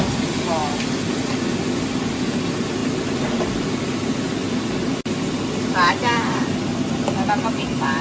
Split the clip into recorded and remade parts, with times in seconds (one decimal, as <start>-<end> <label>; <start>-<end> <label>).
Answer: 0.0-2.8 recorded; 2.8-4.5 remade; 4.5-6.0 recorded; 6.0-6.6 remade; 6.6-8.0 recorded